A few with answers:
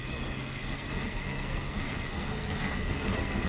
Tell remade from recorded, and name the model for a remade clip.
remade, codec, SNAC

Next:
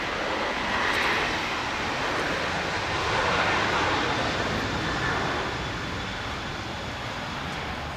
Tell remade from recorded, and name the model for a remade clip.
recorded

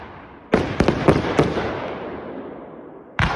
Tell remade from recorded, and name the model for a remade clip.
recorded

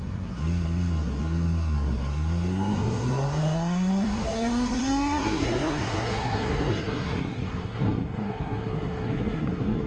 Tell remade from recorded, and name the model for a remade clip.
remade, codec, SNAC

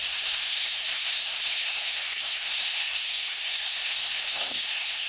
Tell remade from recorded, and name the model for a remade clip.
remade, codec, SNAC